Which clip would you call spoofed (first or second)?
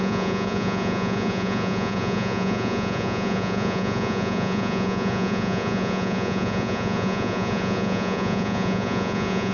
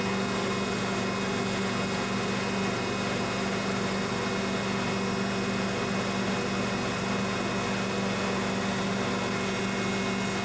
first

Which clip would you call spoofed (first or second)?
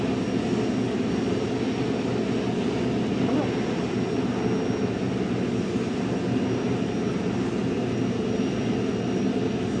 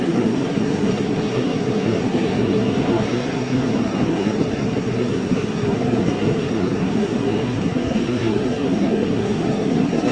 second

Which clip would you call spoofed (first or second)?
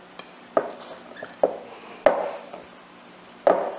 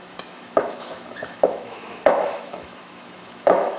second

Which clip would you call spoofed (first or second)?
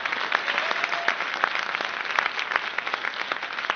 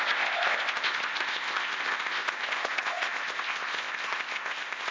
second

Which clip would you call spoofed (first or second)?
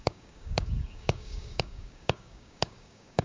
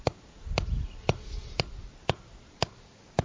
first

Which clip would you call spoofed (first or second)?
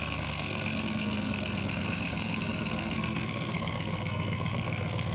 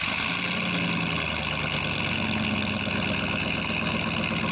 first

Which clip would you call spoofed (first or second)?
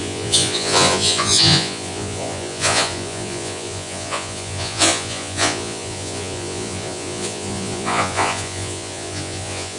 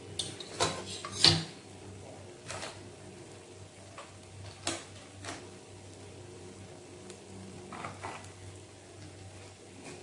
first